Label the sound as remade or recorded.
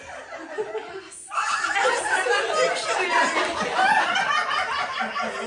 recorded